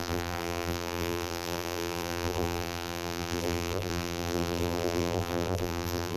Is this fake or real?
fake